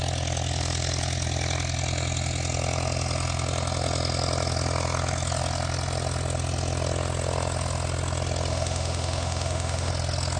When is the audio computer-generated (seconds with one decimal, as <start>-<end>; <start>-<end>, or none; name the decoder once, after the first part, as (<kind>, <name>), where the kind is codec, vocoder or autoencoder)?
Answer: 8.5-9.9 (autoencoder, DAC-VAE)